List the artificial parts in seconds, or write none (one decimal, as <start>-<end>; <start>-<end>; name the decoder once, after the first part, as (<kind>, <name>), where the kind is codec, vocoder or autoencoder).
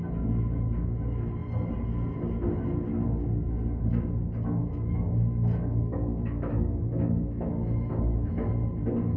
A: 4.6-8.5 (autoencoder, DAC-VAE)